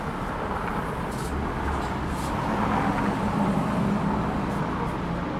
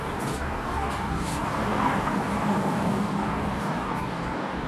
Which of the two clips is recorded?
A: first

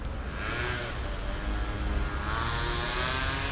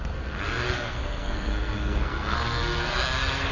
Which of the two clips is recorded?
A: first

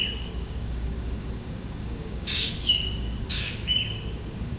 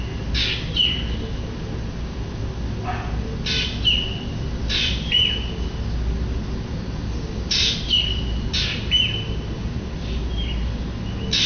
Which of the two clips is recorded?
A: second